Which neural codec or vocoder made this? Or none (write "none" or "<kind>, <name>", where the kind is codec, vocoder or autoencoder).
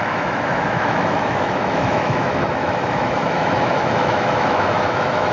autoencoder, DAC-VAE